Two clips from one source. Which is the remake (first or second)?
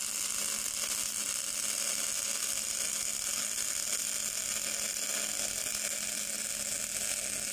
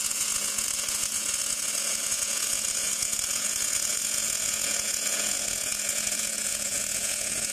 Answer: second